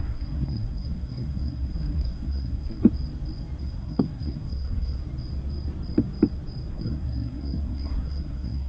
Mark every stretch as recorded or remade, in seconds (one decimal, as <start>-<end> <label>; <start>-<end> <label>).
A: 0.0-2.8 remade; 2.8-3.6 recorded; 3.6-5.0 remade; 5.0-6.7 recorded; 6.7-8.7 remade